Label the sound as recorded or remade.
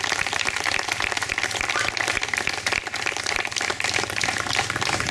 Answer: recorded